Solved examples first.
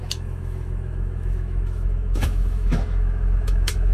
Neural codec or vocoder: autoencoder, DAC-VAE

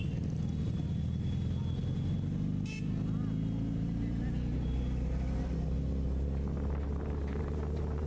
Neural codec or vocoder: none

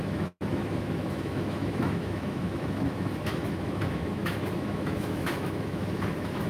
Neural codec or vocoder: autoencoder, DAC-VAE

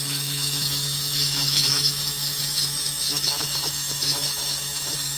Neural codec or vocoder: autoencoder, DAC-VAE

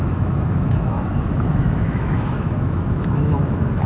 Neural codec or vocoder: autoencoder, DAC-VAE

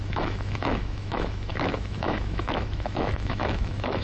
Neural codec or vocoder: autoencoder, DAC-VAE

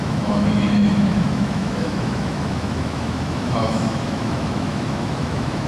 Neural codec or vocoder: autoencoder, DAC-VAE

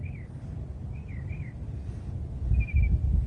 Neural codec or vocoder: none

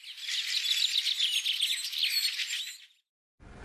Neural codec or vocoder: none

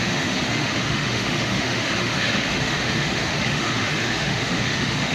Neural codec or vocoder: autoencoder, DAC-VAE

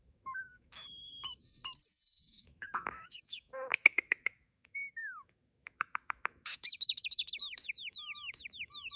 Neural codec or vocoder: autoencoder, DAC-VAE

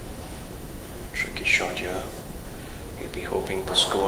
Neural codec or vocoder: autoencoder, DAC-VAE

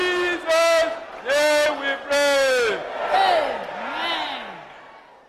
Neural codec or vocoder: none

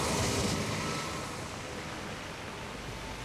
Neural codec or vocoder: none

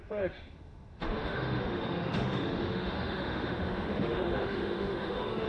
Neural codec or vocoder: autoencoder, DAC-VAE